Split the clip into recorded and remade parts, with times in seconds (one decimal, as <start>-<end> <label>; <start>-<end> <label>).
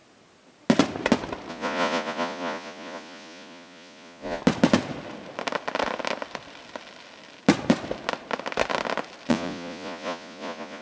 0.0-1.5 recorded; 1.5-4.4 remade; 4.4-9.3 recorded; 9.3-10.8 remade